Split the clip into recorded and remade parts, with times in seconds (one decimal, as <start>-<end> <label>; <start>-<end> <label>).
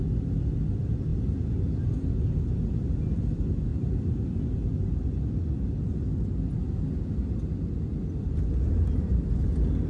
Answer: 0.0-9.9 recorded